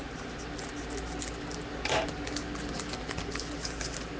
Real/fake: real